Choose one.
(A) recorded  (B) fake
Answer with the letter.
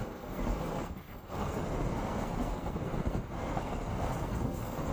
B